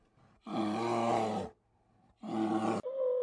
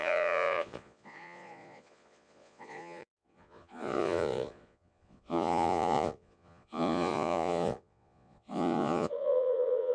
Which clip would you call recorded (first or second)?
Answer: first